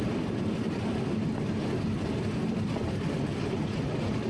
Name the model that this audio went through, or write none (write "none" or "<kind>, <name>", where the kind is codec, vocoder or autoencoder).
none